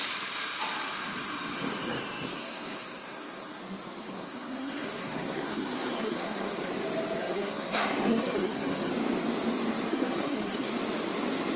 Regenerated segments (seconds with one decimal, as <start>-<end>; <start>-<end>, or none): 2.3-3.6; 4.0-6.7; 7.2-8.9; 9.9-10.7